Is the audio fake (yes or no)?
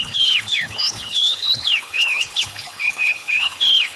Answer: yes